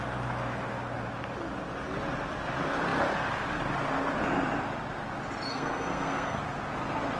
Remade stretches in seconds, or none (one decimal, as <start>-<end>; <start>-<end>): 5.5-6.4